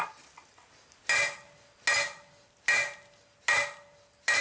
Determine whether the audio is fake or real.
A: real